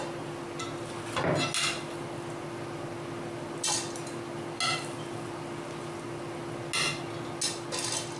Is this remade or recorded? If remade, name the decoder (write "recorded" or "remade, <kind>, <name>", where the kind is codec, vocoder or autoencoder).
recorded